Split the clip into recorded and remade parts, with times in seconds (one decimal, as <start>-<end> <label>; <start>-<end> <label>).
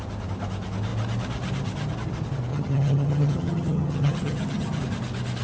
0.0-2.5 recorded; 2.5-4.8 remade; 4.8-5.4 recorded